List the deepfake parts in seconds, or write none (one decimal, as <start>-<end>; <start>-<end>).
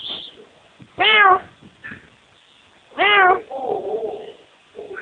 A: 0.0-1.8; 3.4-5.0